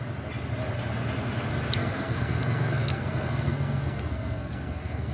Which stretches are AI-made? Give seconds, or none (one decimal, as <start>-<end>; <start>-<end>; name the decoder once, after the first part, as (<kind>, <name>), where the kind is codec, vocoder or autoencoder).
1.8-5.1 (codec, SNAC)